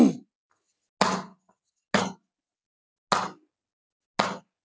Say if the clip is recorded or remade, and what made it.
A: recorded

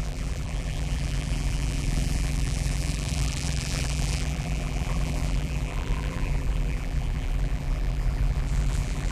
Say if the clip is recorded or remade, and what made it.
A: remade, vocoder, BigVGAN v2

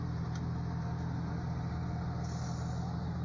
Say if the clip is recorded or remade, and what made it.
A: recorded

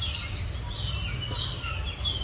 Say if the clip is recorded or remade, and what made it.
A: recorded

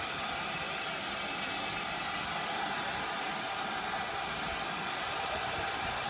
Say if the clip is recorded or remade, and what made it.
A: recorded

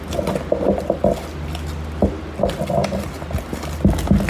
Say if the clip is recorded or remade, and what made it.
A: recorded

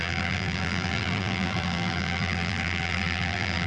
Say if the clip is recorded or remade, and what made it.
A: remade, vocoder, BigVGAN v2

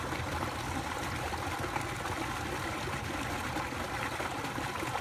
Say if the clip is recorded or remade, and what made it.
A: recorded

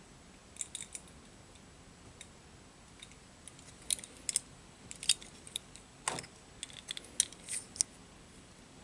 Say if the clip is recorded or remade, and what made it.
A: recorded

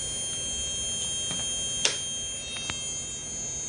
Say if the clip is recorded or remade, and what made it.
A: recorded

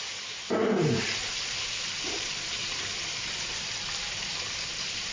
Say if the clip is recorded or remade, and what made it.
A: remade, vocoder, BigVGAN v2